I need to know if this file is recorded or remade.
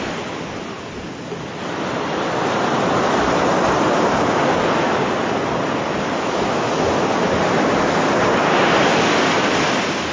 recorded